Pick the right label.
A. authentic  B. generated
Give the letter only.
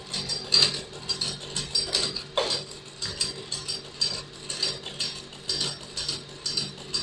A